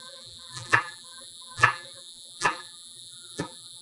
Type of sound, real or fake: fake